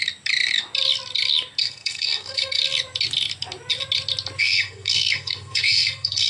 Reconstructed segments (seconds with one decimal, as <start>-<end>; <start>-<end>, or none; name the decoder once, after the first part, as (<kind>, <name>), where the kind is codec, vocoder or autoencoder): 1.6-2.6 (codec, SNAC); 4.4-6.3